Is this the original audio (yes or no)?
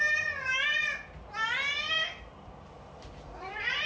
no